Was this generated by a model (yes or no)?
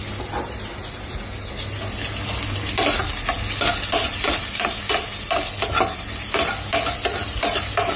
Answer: no